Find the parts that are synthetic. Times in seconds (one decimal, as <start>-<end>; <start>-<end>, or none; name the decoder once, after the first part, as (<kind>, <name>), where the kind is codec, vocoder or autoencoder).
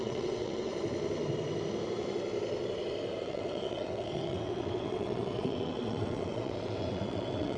0.0-0.7 (vocoder, WaveNeXt); 3.2-7.6